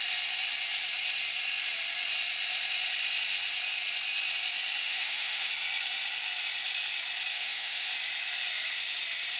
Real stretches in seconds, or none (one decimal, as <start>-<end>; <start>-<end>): 0.0-4.8; 5.5-7.3; 7.9-9.4